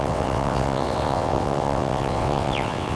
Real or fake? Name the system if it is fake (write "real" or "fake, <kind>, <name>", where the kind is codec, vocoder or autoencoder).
fake, vocoder, WaveNeXt